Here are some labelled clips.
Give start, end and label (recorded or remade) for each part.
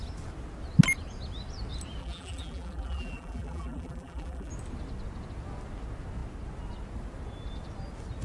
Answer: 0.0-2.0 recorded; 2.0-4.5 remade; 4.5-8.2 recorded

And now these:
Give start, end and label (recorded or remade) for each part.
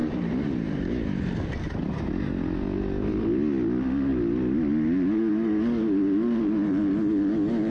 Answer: 0.0-7.7 recorded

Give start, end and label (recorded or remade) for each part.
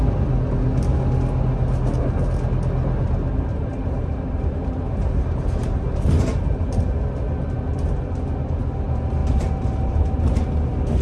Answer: 0.0-3.5 recorded; 3.5-6.8 remade; 6.8-9.2 recorded; 9.2-10.2 remade; 10.2-11.0 recorded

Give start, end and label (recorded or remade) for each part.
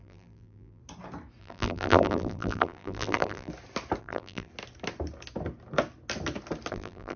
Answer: 0.0-0.8 remade; 0.8-1.4 recorded; 1.4-3.5 remade; 3.5-4.0 recorded; 4.0-4.5 remade; 4.5-6.7 recorded; 6.7-7.2 remade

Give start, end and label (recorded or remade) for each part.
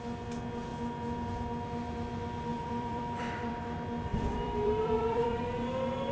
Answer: 0.0-2.5 recorded; 2.5-3.6 remade; 3.6-4.1 recorded; 4.1-5.4 remade; 5.4-6.1 recorded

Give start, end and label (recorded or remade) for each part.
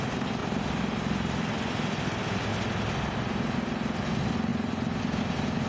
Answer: 0.0-0.4 recorded; 0.4-2.5 remade; 2.5-4.5 recorded; 4.5-5.2 remade; 5.2-5.7 recorded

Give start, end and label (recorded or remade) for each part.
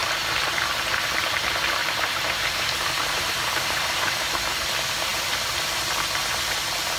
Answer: 0.0-1.8 recorded; 1.8-4.2 remade; 4.2-7.0 recorded